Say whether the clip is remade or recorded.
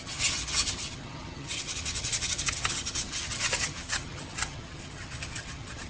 remade